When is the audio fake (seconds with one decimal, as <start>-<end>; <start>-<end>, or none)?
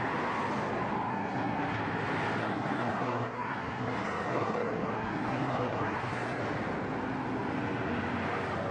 1.1-1.8; 2.4-6.4